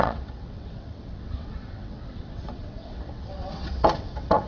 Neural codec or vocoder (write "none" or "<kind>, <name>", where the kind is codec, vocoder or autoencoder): vocoder, WaveNeXt